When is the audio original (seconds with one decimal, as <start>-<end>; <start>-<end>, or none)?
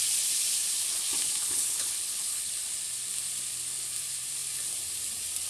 0.0-1.4; 2.5-5.5